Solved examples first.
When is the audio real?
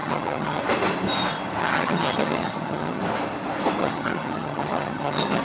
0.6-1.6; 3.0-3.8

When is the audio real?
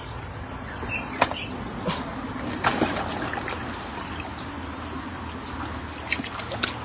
0.0-4.3; 5.3-6.8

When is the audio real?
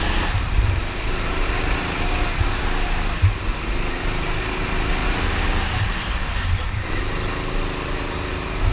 0.0-8.7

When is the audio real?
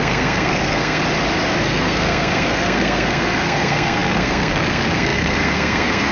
1.0-1.6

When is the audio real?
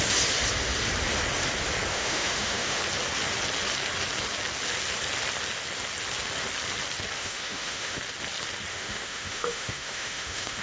0.0-1.9; 2.8-7.2; 8.0-8.7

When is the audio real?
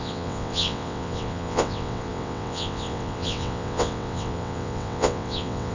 none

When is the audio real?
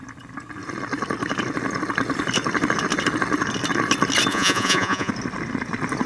0.0-4.3; 5.1-6.1